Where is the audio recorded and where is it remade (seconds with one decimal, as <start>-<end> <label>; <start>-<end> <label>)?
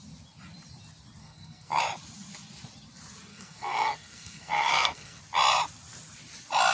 0.0-1.2 recorded; 1.2-1.8 remade; 1.8-3.3 recorded; 3.3-5.2 remade; 5.2-6.7 recorded